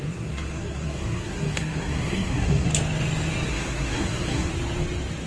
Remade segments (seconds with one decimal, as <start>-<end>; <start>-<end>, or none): 0.0-2.7; 3.5-4.5